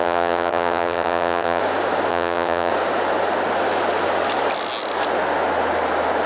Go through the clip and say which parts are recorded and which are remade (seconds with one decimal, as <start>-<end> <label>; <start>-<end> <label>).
0.0-1.6 remade; 1.6-2.1 recorded; 2.1-2.7 remade; 2.7-6.3 recorded